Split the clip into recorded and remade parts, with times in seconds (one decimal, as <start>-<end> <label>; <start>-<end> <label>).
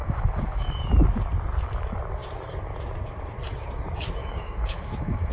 0.0-0.8 remade; 0.8-4.2 recorded; 4.2-5.3 remade